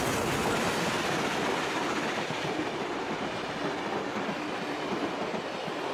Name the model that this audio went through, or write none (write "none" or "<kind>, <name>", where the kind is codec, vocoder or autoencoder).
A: none